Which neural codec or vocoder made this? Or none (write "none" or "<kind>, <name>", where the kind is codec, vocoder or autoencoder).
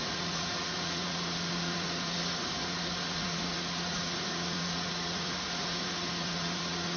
vocoder, Vocos